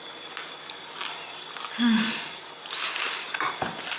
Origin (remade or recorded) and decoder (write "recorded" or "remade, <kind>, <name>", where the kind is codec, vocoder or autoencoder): recorded